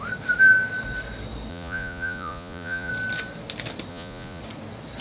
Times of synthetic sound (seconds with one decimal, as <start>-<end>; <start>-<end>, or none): 1.5-2.9; 3.9-4.4